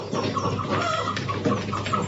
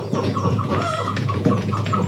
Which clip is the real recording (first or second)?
first